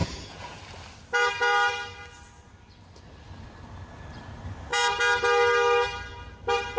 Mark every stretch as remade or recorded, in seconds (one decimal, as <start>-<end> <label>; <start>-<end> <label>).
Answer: 0.0-0.6 remade; 0.6-6.8 recorded